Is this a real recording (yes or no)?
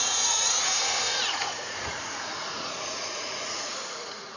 no